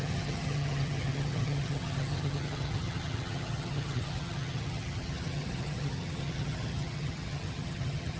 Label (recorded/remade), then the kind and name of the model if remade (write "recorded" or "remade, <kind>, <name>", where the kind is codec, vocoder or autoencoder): remade, vocoder, HiFi-GAN